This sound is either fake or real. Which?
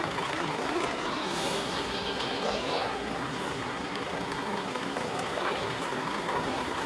fake